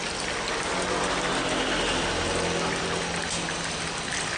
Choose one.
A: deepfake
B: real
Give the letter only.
B